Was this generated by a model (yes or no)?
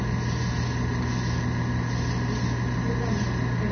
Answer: no